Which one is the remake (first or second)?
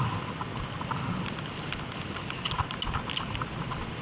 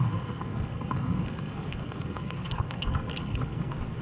second